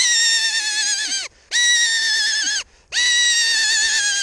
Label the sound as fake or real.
real